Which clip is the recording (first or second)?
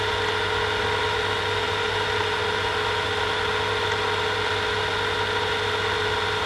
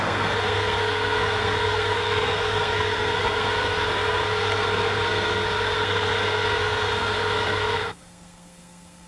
first